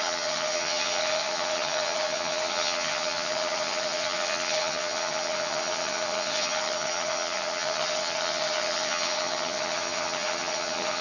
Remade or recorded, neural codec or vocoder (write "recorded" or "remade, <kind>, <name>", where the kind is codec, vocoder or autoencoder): remade, vocoder, HiFi-GAN